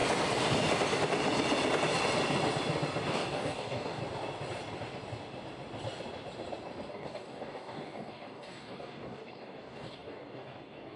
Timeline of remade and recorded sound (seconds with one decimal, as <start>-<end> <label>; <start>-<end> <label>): 0.0-3.1 recorded; 3.1-4.0 remade; 4.0-6.9 recorded; 6.9-11.0 remade